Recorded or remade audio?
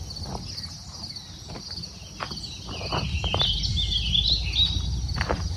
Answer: recorded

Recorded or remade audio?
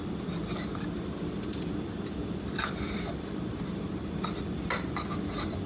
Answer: recorded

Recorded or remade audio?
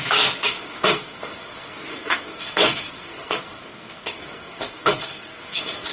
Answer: remade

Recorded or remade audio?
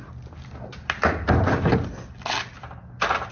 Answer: recorded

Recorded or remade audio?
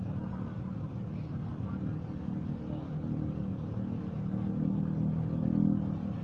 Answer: recorded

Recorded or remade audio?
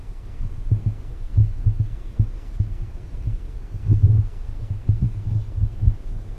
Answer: remade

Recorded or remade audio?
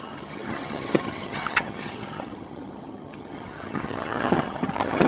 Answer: remade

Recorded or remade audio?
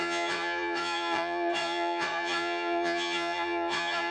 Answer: remade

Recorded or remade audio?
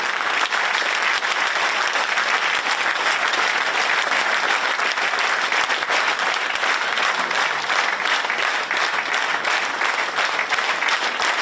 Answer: recorded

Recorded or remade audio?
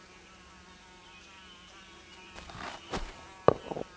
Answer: recorded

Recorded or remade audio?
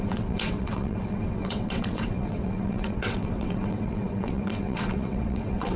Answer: remade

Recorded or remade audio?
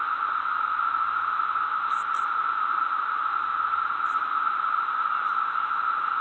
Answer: recorded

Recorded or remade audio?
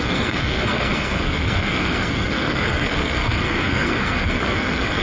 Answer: remade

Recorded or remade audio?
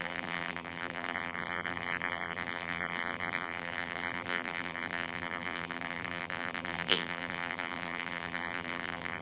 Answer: remade